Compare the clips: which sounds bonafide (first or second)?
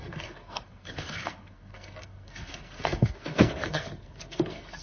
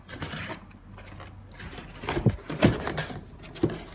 second